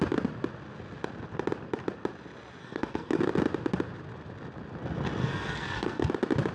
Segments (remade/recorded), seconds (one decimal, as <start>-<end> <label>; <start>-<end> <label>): 0.0-2.6 recorded; 2.6-3.2 remade; 3.2-5.2 recorded; 5.2-6.1 remade; 6.1-6.5 recorded